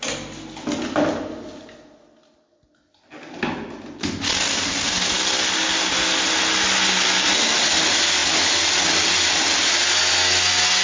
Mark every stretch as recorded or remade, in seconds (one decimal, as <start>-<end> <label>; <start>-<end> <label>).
0.0-10.8 recorded